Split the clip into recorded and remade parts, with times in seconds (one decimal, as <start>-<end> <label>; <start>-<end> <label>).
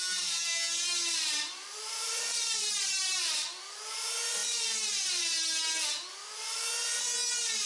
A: 0.0-1.7 recorded; 1.7-2.9 remade; 2.9-7.7 recorded